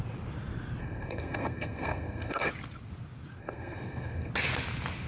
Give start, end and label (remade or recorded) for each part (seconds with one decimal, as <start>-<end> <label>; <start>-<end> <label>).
0.0-0.8 recorded; 0.8-2.5 remade; 2.5-3.4 recorded; 3.4-4.3 remade; 4.3-5.1 recorded